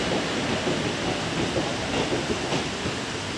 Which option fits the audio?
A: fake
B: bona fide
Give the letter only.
B